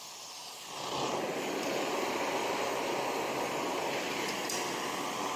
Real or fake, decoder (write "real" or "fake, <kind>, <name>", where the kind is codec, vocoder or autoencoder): real